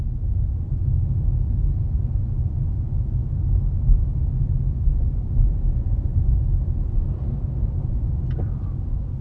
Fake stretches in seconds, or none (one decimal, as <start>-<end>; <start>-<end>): none